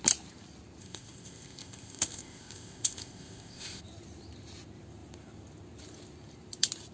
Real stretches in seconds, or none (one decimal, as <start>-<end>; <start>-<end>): 0.0-0.8; 3.8-6.9